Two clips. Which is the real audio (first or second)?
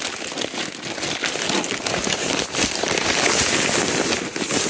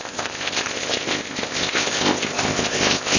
first